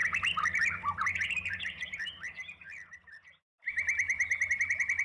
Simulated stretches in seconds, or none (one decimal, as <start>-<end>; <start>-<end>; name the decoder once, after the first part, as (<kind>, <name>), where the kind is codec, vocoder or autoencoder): none

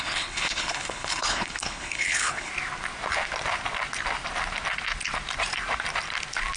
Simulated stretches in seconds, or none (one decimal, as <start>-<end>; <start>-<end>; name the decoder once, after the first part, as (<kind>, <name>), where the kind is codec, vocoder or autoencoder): 0.0-2.5 (codec, HILCodec)

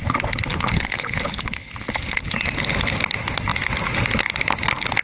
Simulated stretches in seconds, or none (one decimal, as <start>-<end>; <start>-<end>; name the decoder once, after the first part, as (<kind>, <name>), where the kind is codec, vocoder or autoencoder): 0.5-1.7 (codec, HILCodec)

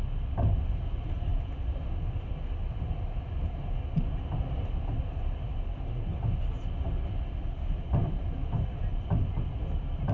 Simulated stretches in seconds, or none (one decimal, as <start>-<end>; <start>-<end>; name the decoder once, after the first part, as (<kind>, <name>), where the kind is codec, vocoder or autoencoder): none

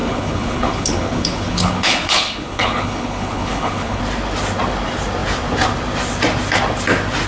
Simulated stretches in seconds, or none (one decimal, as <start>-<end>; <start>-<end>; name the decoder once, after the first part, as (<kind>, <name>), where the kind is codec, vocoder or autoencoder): 0.0-4.0 (codec, HILCodec)

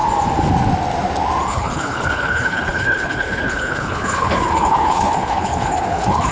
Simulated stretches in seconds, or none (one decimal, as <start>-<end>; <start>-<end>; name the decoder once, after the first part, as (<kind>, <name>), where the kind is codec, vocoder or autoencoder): 1.5-6.3 (codec, HILCodec)

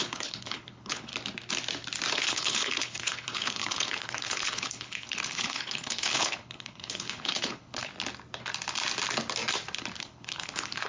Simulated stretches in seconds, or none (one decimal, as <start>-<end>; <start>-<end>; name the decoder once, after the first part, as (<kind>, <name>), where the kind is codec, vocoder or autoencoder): 0.0-1.1 (codec, HILCodec); 2.1-7.9; 10.0-10.9